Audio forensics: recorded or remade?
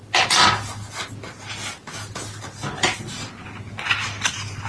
recorded